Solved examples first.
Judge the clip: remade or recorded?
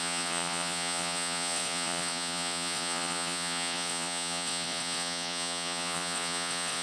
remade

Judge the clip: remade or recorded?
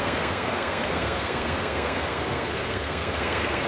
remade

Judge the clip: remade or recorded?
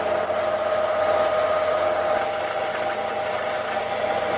recorded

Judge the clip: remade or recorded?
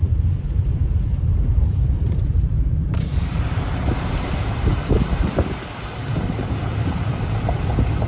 remade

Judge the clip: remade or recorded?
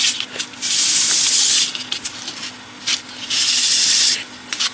recorded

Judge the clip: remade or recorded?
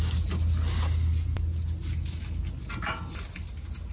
recorded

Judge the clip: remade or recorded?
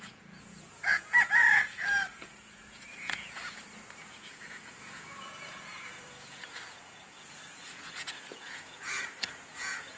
remade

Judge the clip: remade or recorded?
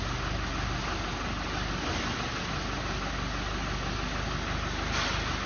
recorded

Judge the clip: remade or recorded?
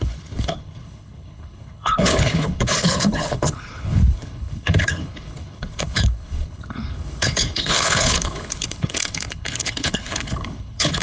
remade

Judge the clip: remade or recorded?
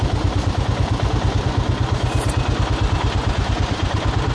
remade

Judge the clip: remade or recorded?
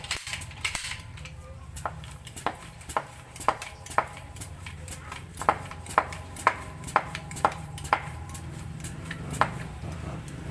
remade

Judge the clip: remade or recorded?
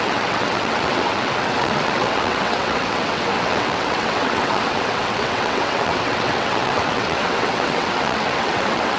remade